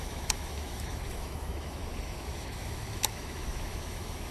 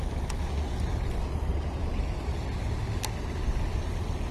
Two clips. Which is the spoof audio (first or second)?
first